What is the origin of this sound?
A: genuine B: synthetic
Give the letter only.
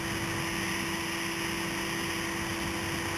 A